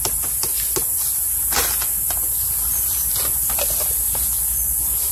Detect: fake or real real